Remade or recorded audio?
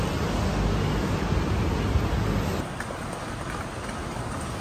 recorded